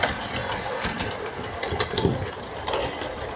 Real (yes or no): yes